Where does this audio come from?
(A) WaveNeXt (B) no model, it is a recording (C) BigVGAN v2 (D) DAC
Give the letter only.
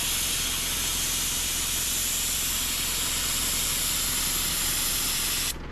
B